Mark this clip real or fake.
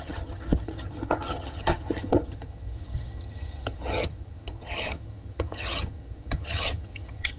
fake